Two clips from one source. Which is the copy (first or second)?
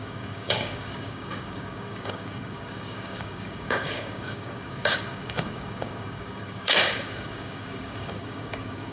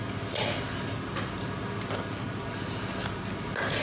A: first